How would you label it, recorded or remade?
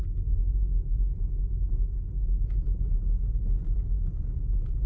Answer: recorded